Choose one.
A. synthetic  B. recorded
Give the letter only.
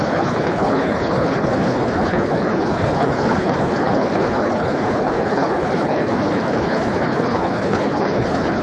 A